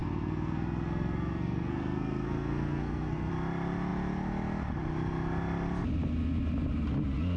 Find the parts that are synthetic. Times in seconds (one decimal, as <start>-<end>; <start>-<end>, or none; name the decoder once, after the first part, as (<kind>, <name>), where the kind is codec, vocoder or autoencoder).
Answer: 0.0-3.3 (codec, SNAC)